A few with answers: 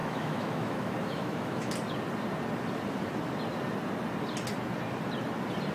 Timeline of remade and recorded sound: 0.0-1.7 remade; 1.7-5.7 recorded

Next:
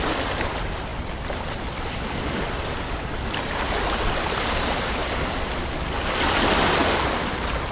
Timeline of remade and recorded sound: 0.0-5.0 remade; 5.0-6.1 recorded; 6.1-6.8 remade; 6.8-7.3 recorded; 7.3-7.7 remade

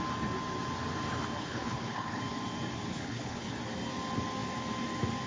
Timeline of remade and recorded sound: 0.0-1.4 recorded; 1.4-2.2 remade; 2.2-2.9 recorded; 2.9-3.5 remade; 3.5-5.3 recorded

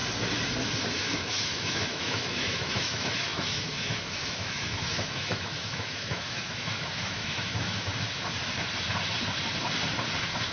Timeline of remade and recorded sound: 0.0-0.9 recorded; 0.9-7.9 remade; 7.9-10.5 recorded

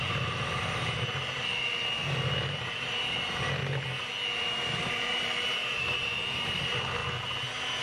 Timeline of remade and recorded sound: 0.0-3.6 remade; 3.6-4.4 recorded; 4.4-7.0 remade; 7.0-7.8 recorded

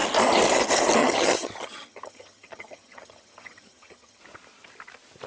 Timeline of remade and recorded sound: 0.0-1.0 recorded; 1.0-4.2 remade; 4.2-5.3 recorded